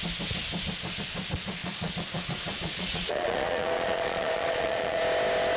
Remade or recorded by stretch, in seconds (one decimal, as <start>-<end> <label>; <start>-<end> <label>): 0.0-1.6 recorded; 1.6-5.0 remade; 5.0-5.6 recorded